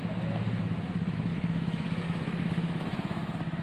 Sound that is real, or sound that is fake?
fake